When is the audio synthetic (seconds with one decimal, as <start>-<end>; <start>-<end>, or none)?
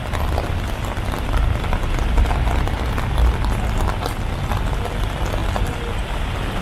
none